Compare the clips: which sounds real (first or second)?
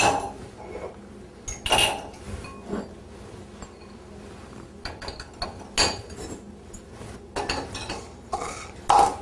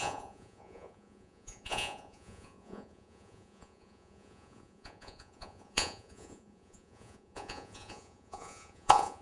first